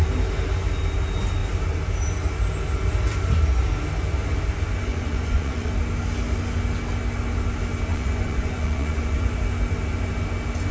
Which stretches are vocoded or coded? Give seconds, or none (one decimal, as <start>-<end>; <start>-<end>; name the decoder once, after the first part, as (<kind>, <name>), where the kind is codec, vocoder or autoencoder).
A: 4.9-5.7 (vocoder, Vocos); 7.9-9.3